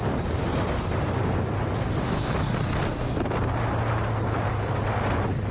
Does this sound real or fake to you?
real